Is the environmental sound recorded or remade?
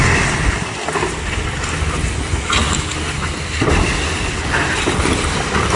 recorded